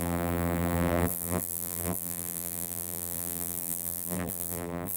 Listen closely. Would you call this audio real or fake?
fake